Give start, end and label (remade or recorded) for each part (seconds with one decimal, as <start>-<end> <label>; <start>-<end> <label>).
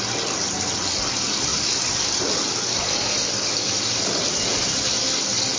0.0-1.5 recorded; 1.5-4.9 remade; 4.9-5.6 recorded